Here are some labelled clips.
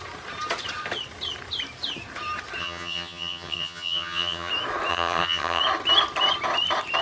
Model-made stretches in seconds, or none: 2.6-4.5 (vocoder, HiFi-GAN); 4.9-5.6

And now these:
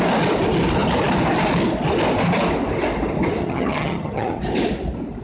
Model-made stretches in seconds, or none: 3.4-4.4 (vocoder, HiFi-GAN)

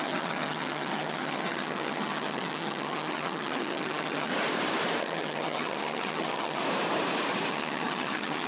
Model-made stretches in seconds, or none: 0.0-4.3 (vocoder, HiFi-GAN); 5.0-6.6; 7.5-8.5

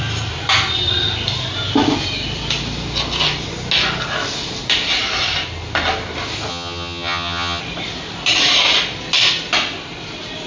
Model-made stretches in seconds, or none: 6.5-7.6 (vocoder, HiFi-GAN)

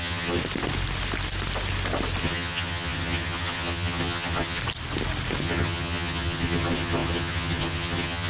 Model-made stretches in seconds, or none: 0.0-0.4 (vocoder, HiFi-GAN); 2.2-4.6; 5.4-8.3

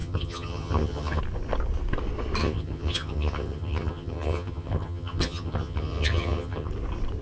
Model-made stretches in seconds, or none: 0.0-1.2 (vocoder, HiFi-GAN); 2.4-6.7